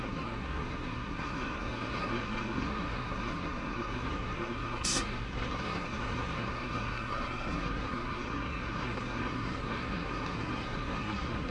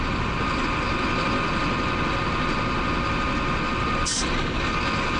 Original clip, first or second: second